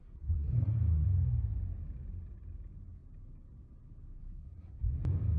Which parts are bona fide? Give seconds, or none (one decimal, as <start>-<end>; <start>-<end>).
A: 0.8-4.2; 4.8-5.4